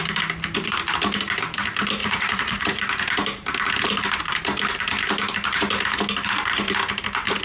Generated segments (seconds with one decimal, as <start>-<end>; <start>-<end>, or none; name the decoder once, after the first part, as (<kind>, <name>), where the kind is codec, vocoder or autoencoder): 2.0-2.8 (vocoder, Vocos)